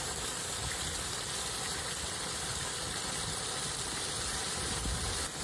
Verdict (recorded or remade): recorded